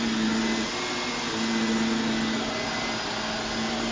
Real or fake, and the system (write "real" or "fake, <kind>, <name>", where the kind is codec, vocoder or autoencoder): real